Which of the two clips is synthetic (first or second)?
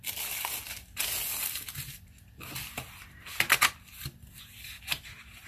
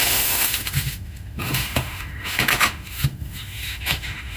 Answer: second